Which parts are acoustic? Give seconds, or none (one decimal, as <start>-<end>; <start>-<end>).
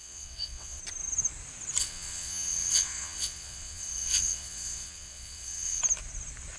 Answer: 0.8-1.8; 5.8-6.6